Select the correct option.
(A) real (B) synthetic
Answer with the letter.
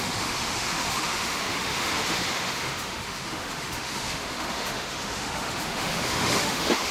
B